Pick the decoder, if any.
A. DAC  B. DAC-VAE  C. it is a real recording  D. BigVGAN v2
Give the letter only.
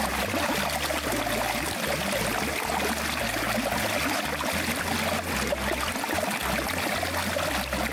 C